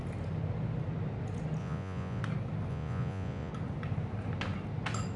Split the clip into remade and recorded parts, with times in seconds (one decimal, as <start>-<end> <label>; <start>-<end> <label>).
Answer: 0.0-1.6 recorded; 1.6-2.2 remade; 2.2-2.7 recorded; 2.7-3.5 remade; 3.5-5.2 recorded